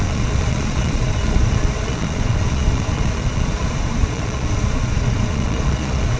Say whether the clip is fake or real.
fake